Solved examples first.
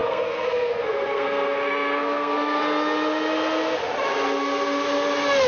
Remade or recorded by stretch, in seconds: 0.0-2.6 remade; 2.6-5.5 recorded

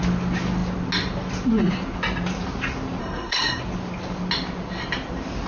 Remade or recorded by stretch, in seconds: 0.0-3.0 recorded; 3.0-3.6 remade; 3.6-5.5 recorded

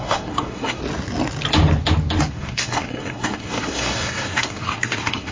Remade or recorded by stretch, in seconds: 0.0-0.8 remade; 0.8-2.3 recorded; 2.3-5.3 remade

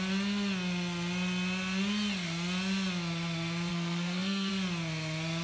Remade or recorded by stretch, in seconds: 0.0-3.7 recorded; 3.7-4.5 remade; 4.5-5.4 recorded

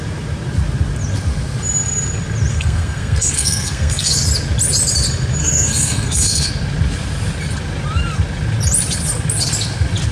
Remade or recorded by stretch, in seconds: 0.0-2.5 recorded; 2.5-4.1 remade; 4.1-5.4 recorded; 5.4-6.5 remade; 6.5-10.1 recorded